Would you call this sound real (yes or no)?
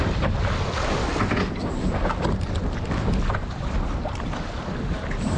yes